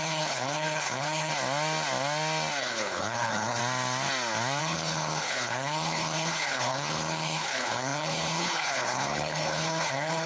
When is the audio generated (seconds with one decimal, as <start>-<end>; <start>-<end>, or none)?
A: 0.0-1.3; 2.6-3.6; 4.6-10.3